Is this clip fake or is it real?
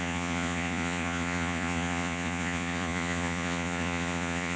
fake